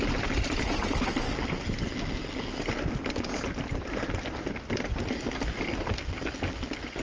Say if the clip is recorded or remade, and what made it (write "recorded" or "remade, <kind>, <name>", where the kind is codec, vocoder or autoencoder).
recorded